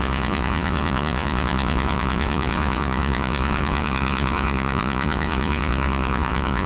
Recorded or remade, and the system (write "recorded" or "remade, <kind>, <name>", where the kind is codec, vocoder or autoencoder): remade, vocoder, Vocos